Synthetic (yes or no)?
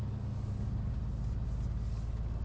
no